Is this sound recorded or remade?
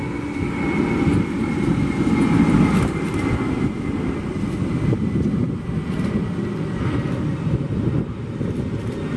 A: recorded